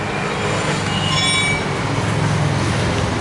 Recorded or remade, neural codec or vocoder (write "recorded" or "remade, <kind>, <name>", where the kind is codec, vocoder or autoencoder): recorded